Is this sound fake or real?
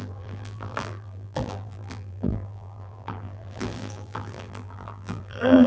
fake